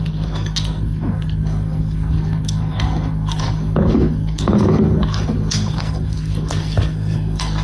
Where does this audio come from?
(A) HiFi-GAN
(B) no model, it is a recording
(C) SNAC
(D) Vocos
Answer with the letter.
C